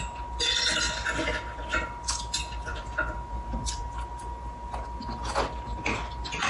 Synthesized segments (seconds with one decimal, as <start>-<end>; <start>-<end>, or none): none

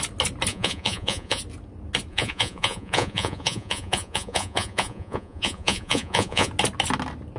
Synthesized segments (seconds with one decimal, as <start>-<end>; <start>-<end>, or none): 0.5-1.4; 2.1-6.5

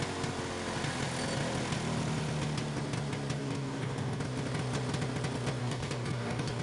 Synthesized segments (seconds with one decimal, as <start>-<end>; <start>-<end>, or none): 3.4-4.2; 5.6-6.6

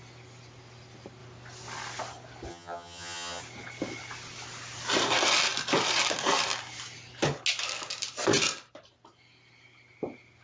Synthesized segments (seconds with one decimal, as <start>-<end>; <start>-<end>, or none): 2.5-3.4